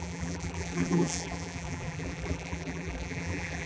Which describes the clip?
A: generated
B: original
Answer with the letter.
A